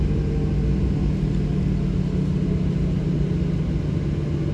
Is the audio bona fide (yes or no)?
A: yes